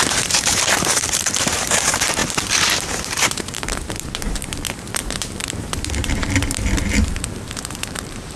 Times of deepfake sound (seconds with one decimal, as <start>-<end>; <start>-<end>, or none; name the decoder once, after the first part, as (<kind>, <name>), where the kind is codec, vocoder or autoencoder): 0.0-2.2 (vocoder, BigVGAN v2); 2.9-8.4